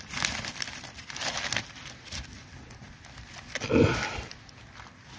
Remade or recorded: recorded